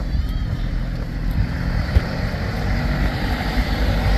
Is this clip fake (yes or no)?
yes